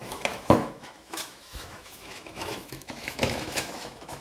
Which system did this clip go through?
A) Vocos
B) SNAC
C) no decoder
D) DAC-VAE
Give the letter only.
D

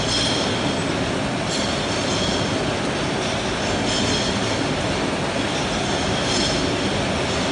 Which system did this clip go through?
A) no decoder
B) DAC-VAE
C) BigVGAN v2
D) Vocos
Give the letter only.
A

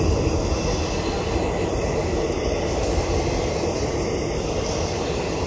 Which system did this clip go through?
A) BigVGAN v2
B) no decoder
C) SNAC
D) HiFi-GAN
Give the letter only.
B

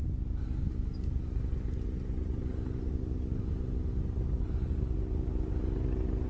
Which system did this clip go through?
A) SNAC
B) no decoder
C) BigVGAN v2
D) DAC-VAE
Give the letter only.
B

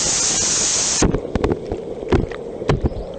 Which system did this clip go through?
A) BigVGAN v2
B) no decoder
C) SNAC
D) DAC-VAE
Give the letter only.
B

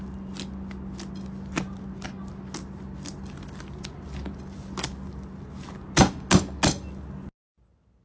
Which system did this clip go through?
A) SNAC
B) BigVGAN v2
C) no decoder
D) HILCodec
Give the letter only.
C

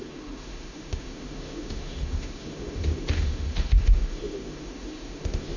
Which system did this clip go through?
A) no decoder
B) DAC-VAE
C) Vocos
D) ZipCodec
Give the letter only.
B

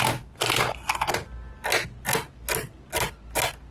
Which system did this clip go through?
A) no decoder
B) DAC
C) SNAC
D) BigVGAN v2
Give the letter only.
A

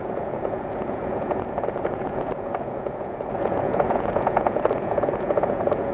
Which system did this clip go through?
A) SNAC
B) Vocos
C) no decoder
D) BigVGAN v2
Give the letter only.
B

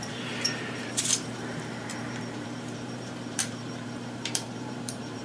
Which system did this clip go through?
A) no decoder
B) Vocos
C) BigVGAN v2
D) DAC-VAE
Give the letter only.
C